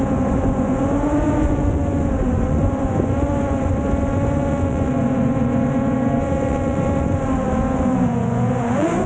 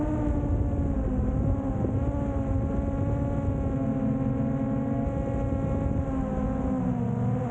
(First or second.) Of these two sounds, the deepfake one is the first